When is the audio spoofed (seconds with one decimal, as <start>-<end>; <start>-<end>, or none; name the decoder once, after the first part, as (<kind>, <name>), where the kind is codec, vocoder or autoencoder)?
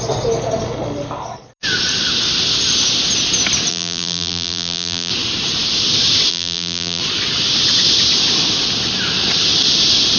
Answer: 3.7-5.1 (vocoder, BigVGAN v2); 6.3-7.0